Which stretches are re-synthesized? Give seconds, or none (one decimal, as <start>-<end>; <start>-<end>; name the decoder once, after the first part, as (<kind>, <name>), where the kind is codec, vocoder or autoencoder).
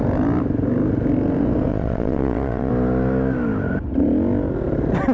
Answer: 1.7-2.7 (vocoder, Vocos)